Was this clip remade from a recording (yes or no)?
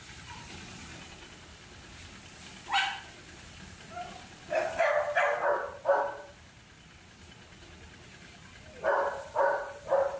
no